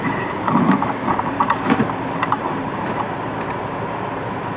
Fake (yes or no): yes